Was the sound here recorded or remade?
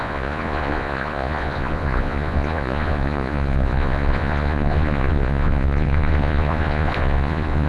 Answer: remade